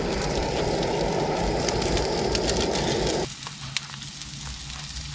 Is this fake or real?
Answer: real